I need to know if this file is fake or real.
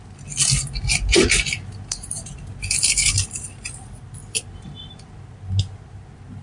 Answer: real